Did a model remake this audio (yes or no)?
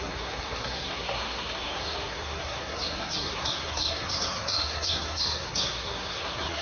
yes